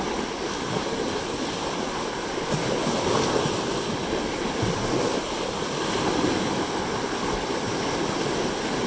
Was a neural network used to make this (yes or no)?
no